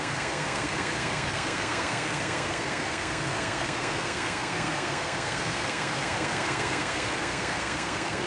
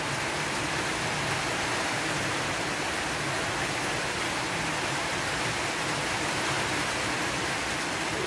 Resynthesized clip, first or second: first